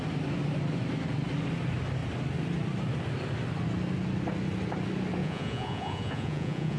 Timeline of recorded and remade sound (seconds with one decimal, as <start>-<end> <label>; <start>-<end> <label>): 0.0-5.2 recorded; 5.2-6.8 remade